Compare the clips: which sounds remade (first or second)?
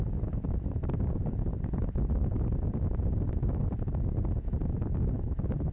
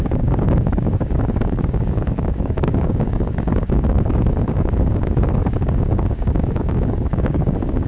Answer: second